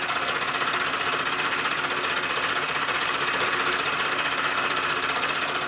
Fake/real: real